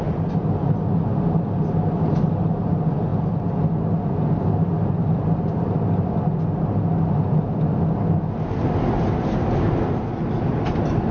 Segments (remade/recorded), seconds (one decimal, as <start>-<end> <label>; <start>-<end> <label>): 0.0-11.1 recorded